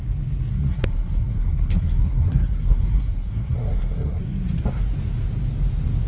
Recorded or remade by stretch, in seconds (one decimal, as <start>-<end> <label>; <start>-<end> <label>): 0.0-0.5 recorded; 0.5-4.2 remade; 4.2-6.1 recorded